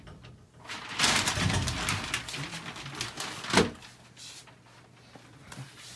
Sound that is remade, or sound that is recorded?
recorded